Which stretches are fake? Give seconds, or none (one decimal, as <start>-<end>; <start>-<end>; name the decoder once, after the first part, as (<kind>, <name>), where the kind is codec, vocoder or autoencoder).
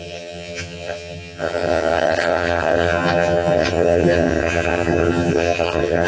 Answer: 0.0-6.1 (vocoder, HiFi-GAN)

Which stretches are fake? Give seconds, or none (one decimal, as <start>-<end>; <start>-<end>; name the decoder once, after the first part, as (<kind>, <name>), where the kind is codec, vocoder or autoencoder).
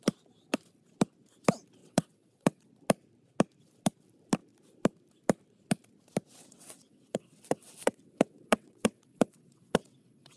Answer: 1.8-2.7 (vocoder, WaveNeXt); 6.4-10.4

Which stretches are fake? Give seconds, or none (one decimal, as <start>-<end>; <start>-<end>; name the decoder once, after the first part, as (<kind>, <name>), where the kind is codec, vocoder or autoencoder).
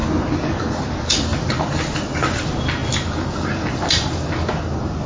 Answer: none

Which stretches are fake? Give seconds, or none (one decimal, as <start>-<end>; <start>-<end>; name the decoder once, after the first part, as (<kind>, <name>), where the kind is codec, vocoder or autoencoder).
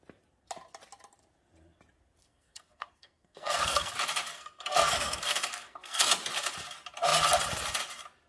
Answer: 2.2-3.9 (codec, SNAC); 4.3-6.1